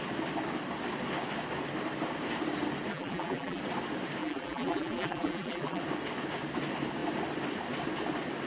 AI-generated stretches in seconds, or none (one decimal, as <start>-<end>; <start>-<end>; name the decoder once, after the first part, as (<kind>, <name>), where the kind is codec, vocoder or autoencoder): 2.9-3.6 (vocoder, BigVGAN v2); 4.2-5.8